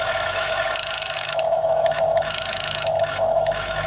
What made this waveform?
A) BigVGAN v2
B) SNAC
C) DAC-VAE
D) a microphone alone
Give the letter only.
C